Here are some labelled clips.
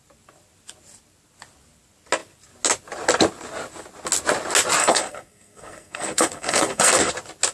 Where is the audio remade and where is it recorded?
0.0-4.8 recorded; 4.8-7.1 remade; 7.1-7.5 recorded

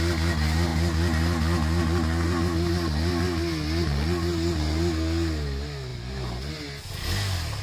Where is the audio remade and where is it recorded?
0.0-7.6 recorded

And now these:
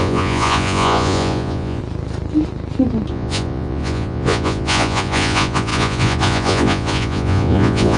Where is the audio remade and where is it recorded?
0.0-1.8 remade; 1.8-3.1 recorded; 3.1-8.0 remade

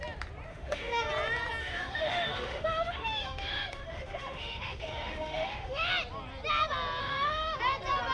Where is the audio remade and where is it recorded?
0.0-0.5 recorded; 0.5-1.1 remade; 1.1-1.6 recorded; 1.6-5.9 remade; 5.9-7.0 recorded; 7.0-7.6 remade; 7.6-8.1 recorded

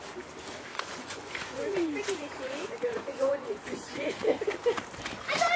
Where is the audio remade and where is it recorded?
0.0-0.7 recorded; 0.7-4.1 remade; 4.1-5.6 recorded

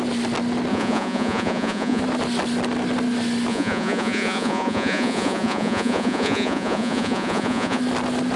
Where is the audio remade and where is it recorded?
0.0-0.7 recorded; 0.7-2.0 remade; 2.0-3.5 recorded; 3.5-7.8 remade; 7.8-8.4 recorded